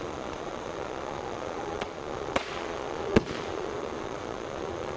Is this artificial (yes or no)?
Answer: yes